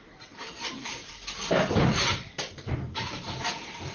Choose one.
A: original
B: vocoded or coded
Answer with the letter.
B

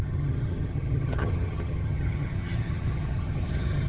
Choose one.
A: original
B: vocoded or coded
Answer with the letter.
B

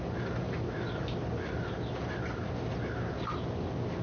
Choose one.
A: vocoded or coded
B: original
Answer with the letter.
B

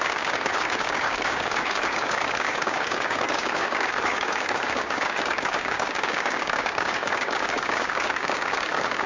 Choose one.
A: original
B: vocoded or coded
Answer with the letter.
B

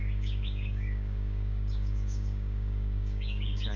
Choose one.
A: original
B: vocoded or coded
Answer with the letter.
B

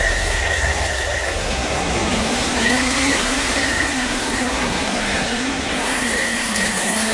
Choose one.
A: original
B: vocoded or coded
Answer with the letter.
B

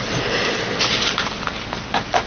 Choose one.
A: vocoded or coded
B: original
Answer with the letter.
B